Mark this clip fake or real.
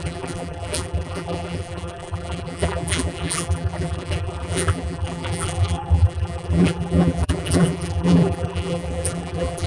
fake